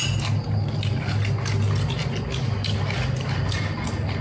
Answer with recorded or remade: recorded